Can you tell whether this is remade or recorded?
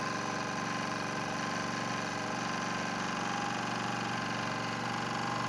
recorded